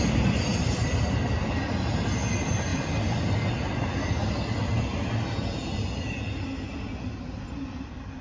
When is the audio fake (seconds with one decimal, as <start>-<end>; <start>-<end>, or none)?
2.7-3.3